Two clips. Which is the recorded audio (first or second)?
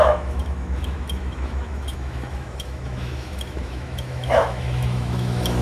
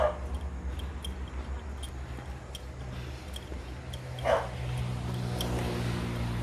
second